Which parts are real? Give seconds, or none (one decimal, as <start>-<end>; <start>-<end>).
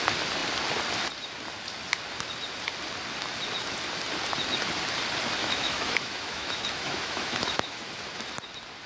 0.0-5.4; 7.9-8.9